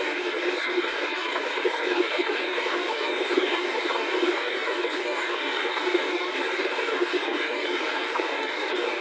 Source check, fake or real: fake